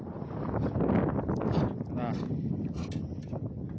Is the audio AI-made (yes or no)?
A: no